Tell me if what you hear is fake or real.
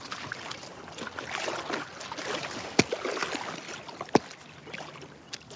real